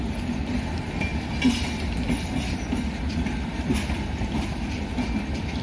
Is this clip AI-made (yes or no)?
no